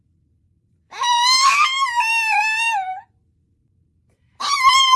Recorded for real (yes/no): no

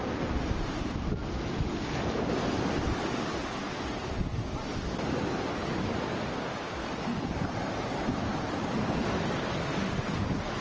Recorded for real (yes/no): yes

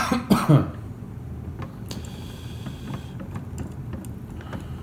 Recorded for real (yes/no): yes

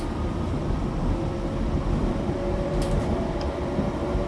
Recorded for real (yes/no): no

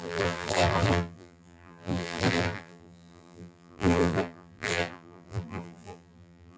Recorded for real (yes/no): no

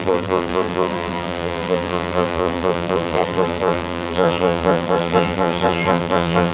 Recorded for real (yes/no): no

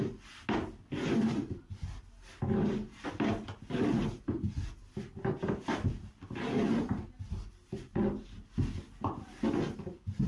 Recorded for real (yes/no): yes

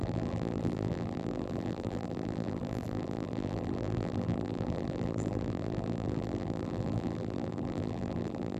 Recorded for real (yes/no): no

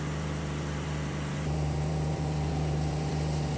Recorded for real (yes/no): no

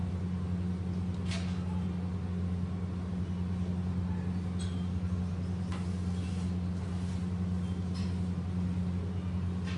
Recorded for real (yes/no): yes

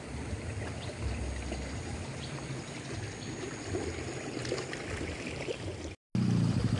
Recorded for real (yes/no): yes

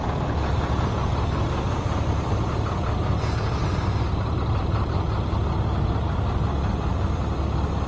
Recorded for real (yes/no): yes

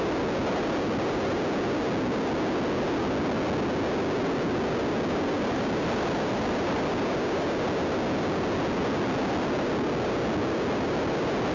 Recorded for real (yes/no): yes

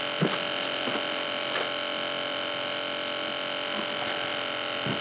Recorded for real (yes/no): yes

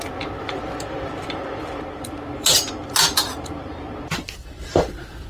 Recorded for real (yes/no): no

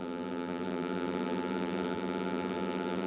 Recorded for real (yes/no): no